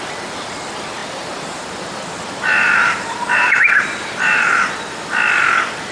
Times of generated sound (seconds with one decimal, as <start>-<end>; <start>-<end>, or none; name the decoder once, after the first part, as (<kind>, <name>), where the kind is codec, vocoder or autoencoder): 1.0-4.5 (vocoder, BigVGAN v2)